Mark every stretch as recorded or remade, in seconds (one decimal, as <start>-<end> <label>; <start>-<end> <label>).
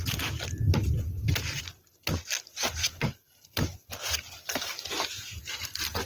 0.0-2.8 recorded; 2.8-3.9 remade; 3.9-6.1 recorded